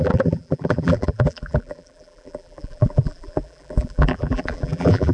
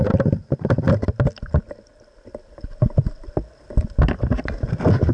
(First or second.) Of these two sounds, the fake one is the first